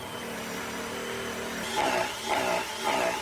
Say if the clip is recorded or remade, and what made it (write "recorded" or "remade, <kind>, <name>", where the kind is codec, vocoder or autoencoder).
recorded